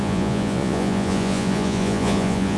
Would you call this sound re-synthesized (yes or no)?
yes